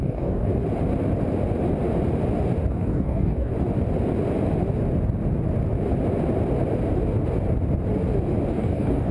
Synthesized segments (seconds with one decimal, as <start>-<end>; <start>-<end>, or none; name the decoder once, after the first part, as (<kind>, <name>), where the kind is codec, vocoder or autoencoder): 0.0-0.5 (codec, DAC); 2.7-3.5; 8.5-9.1